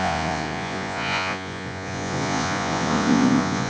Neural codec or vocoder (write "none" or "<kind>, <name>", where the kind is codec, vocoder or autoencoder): vocoder, Vocos